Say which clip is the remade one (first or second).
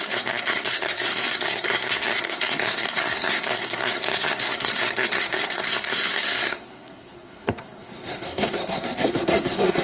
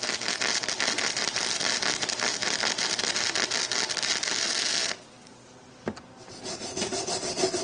first